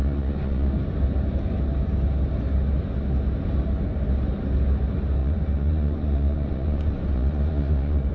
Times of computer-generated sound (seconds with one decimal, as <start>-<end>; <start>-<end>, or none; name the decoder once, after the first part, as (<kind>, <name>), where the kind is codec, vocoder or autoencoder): 0.0-0.7 (vocoder, Vocos); 5.2-8.1